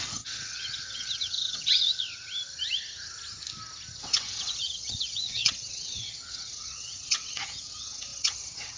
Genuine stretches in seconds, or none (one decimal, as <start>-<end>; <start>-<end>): 1.9-4.0